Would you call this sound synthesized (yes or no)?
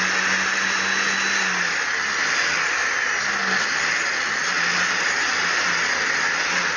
no